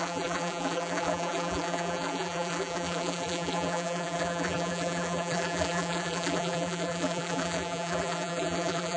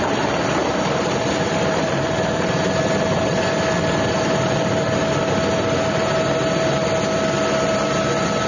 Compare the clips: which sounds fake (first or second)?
first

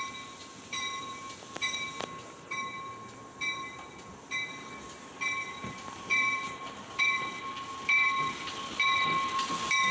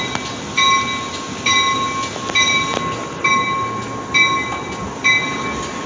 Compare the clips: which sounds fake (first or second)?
first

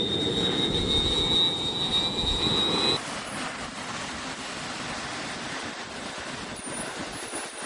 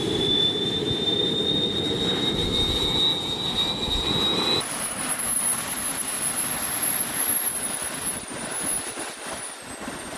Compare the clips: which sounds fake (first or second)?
second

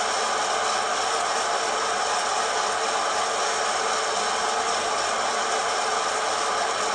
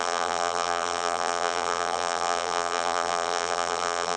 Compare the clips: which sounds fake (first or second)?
second